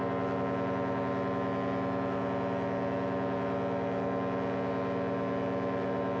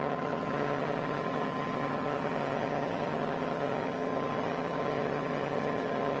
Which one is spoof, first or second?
second